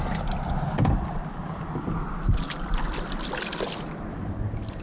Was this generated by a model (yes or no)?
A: yes